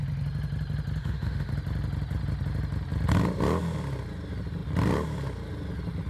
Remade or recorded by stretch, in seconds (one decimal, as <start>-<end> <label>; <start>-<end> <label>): 0.0-1.0 recorded; 1.0-1.5 remade; 1.5-6.1 recorded